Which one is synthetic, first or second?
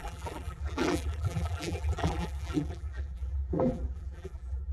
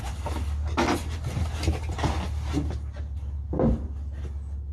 first